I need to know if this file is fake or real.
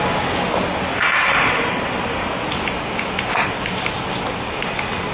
real